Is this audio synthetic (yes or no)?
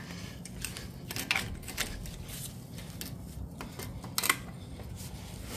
no